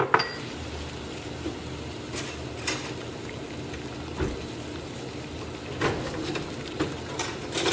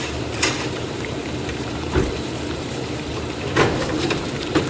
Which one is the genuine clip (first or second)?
first